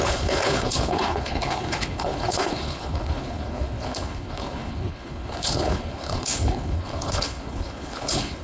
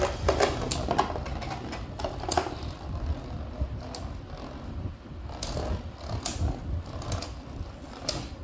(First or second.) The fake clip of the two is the first